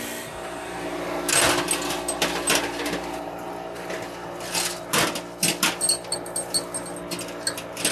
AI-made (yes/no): no